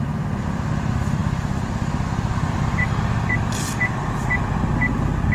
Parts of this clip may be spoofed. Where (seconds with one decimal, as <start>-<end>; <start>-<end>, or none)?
1.2-3.9